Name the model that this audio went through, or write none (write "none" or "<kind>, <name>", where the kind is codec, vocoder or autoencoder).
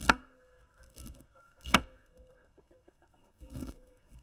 codec, SNAC